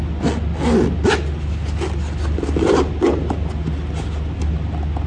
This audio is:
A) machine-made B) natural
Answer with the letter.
B